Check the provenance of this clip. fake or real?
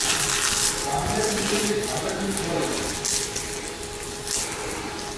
real